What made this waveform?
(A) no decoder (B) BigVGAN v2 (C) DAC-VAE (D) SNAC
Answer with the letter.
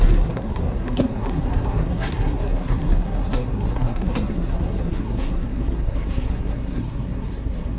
D